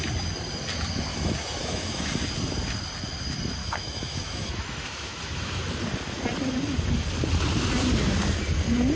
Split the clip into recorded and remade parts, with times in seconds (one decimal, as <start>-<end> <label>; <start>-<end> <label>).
0.0-1.1 recorded; 1.1-2.2 remade; 2.2-3.6 recorded; 3.6-5.7 remade; 5.7-8.9 recorded